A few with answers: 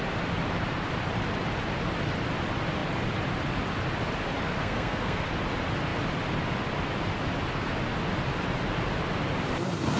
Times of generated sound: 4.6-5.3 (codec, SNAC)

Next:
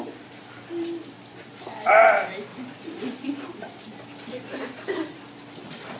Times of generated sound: none

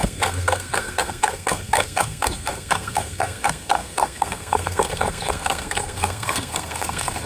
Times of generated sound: 0.0-7.3 (codec, SNAC)

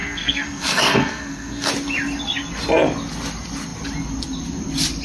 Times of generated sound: 0.0-1.7 (codec, SNAC)

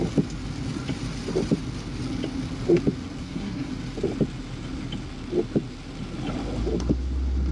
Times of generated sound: 3.2-3.7 (codec, SNAC)

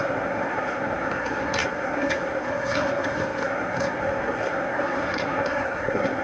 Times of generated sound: 0.0-6.2 (codec, SNAC)

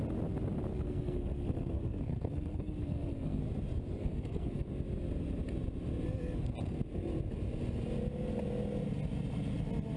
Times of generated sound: 0.7-3.4 (codec, SNAC); 4.0-4.7